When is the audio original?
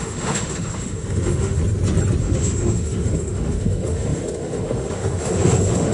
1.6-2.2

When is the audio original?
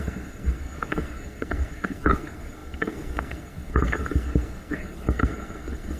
none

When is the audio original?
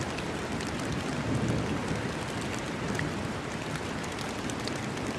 0.0-1.8; 4.1-5.2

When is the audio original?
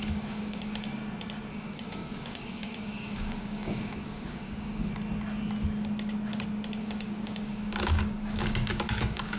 1.0-1.5; 4.9-6.8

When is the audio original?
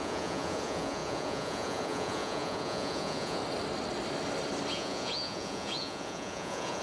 3.4-4.7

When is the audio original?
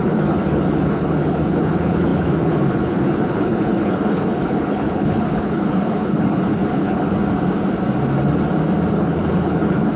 7.0-8.9